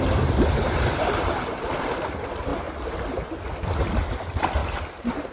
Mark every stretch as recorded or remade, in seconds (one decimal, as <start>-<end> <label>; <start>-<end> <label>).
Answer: 0.0-4.6 recorded; 4.6-5.3 remade